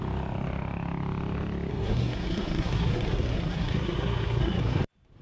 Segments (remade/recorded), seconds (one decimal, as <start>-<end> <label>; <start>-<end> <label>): 0.0-1.7 recorded; 1.7-4.8 remade; 4.8-5.2 recorded

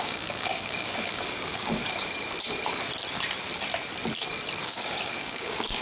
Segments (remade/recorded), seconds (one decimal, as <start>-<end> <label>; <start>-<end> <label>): 0.0-1.8 remade; 1.8-4.6 recorded; 4.6-5.8 remade

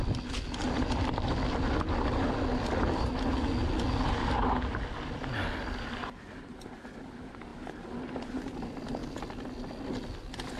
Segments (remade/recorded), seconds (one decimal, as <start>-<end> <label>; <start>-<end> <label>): 0.0-10.6 recorded

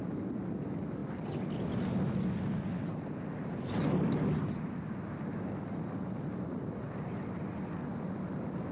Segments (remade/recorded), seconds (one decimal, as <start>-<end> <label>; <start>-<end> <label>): 0.0-8.7 recorded

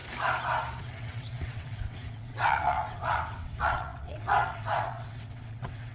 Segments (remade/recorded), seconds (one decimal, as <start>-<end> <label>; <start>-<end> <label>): 0.0-0.8 recorded; 0.8-5.9 remade

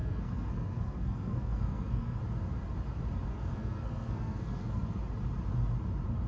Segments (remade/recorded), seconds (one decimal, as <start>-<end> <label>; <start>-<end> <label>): 0.0-2.2 remade; 2.2-3.3 recorded; 3.3-5.0 remade; 5.0-6.3 recorded